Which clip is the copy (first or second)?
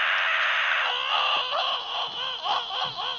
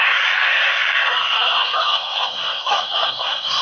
second